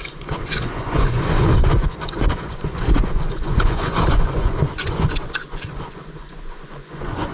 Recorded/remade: remade